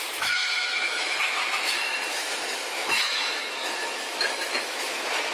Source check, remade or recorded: remade